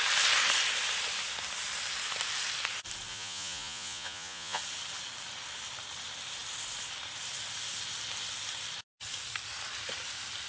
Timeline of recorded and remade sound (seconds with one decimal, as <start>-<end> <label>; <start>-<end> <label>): 0.0-3.1 recorded; 3.1-4.6 remade; 4.6-10.5 recorded